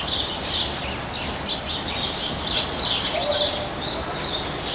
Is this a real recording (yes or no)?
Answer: yes